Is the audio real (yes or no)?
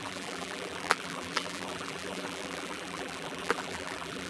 no